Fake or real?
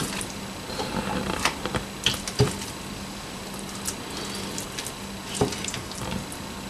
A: real